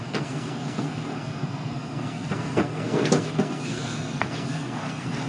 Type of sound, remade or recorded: remade